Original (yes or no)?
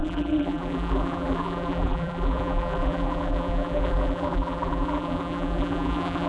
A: no